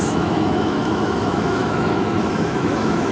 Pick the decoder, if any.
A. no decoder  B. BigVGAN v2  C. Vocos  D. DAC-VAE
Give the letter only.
D